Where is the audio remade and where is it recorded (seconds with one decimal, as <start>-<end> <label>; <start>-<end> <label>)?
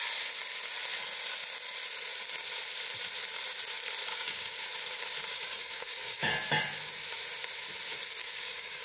0.0-4.1 recorded; 4.1-4.7 remade; 4.7-5.3 recorded; 5.3-6.3 remade; 6.3-8.2 recorded; 8.2-8.8 remade